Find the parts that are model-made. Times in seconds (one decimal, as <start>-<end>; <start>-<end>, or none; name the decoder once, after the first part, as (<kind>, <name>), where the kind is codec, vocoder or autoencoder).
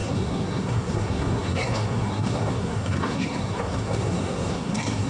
0.0-5.1 (codec, SNAC)